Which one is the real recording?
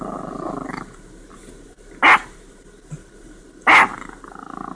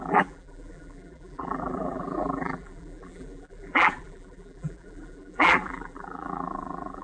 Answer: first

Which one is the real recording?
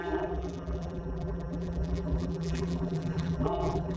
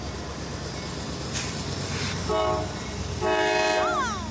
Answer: second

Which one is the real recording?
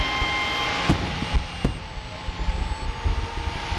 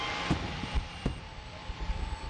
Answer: first